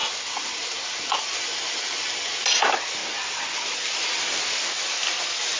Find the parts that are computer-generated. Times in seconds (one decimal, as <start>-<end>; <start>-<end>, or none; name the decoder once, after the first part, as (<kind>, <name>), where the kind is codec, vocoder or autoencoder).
none